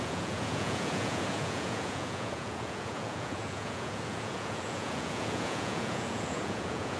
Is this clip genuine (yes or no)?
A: no